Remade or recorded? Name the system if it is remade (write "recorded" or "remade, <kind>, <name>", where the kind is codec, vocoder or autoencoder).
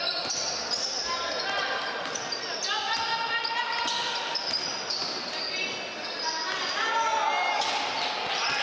recorded